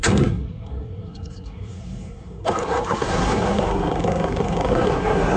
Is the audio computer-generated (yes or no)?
yes